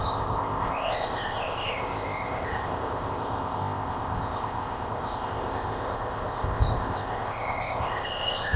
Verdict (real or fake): fake